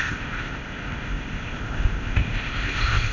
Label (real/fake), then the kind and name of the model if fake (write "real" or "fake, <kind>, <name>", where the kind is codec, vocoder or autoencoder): fake, codec, ZipCodec